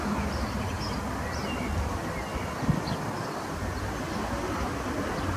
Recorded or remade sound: recorded